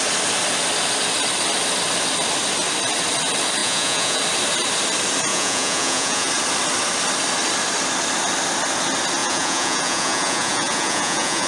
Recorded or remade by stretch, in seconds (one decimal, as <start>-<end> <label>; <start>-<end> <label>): 0.0-3.6 recorded; 3.6-4.2 remade; 4.2-5.3 recorded; 5.3-6.3 remade; 6.3-9.2 recorded; 9.2-11.5 remade

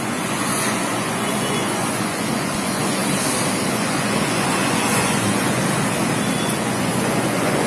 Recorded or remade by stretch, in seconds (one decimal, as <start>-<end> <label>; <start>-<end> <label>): 0.0-3.0 remade; 3.0-3.7 recorded; 3.7-5.6 remade; 5.6-6.3 recorded; 6.3-7.7 remade